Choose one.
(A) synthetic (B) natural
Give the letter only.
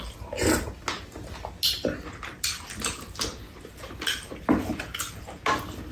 B